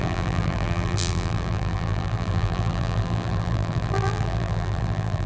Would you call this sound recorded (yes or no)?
no